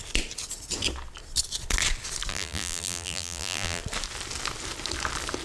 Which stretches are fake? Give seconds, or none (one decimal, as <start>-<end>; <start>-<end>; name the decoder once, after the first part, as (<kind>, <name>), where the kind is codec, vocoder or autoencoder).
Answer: 2.3-3.8 (vocoder, BigVGAN v2)